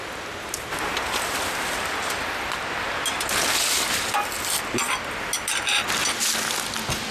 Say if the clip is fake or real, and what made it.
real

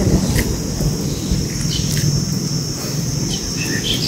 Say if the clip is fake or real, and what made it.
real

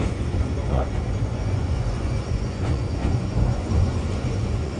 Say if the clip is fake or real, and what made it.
fake, vocoder, Vocos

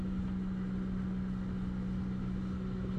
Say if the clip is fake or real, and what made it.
real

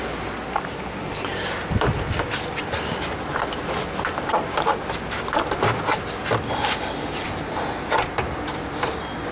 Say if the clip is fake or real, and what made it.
real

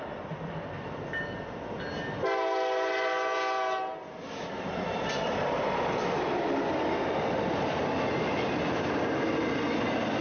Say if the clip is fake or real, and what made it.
real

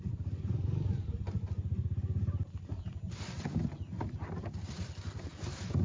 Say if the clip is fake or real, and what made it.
real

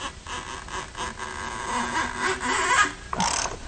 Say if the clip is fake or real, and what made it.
real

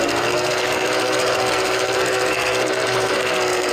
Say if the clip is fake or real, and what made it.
fake, codec, SNAC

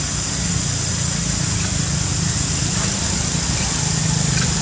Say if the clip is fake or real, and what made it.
real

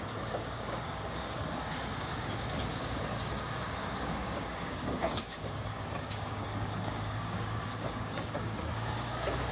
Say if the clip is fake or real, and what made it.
fake, codec, DAC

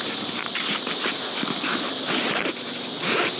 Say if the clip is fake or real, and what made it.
real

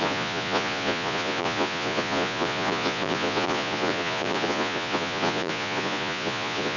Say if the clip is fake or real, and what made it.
fake, vocoder, Vocos